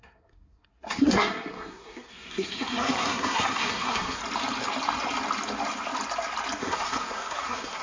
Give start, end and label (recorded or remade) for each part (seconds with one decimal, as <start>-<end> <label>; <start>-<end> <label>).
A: 0.0-4.2 remade; 4.2-6.6 recorded; 6.6-7.8 remade